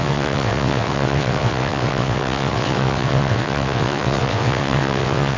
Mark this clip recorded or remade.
remade